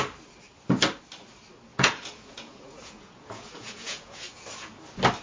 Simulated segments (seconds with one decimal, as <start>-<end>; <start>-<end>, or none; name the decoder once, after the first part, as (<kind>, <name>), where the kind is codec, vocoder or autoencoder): 1.7-4.8 (vocoder, Vocos)